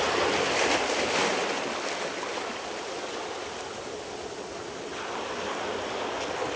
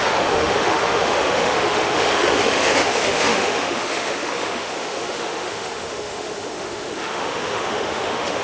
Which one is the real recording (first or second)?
first